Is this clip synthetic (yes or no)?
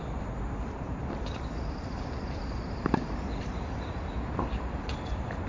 yes